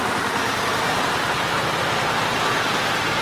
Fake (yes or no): no